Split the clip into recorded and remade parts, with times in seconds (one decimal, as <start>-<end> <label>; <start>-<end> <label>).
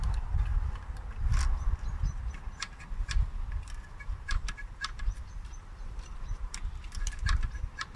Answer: 0.0-0.5 remade; 0.5-4.0 recorded; 4.0-8.0 remade